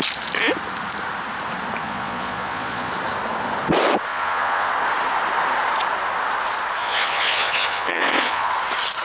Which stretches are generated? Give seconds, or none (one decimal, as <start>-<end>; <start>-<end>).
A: 1.8-2.9; 4.1-4.7; 6.8-8.5